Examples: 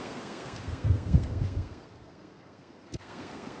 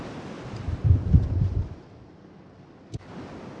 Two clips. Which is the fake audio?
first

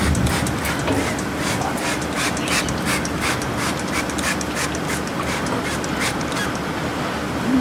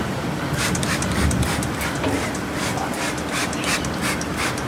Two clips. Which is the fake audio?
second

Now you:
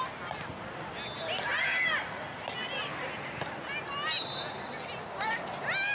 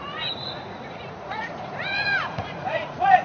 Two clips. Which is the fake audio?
second